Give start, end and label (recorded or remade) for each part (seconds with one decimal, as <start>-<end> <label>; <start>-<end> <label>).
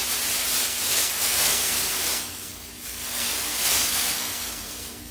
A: 0.0-0.6 recorded; 0.6-5.1 remade